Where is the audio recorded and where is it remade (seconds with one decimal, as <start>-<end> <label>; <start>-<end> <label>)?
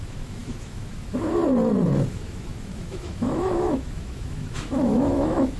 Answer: 0.0-1.4 remade; 1.4-2.1 recorded; 2.1-5.6 remade